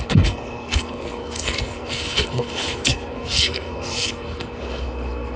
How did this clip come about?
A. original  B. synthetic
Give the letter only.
B